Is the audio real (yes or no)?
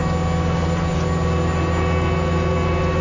yes